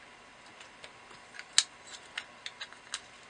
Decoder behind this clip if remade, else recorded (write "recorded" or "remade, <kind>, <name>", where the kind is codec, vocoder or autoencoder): recorded